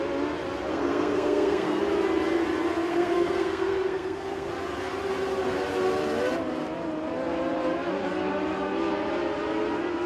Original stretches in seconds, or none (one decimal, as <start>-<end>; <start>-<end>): 0.0-0.7; 1.8-2.9; 4.5-10.1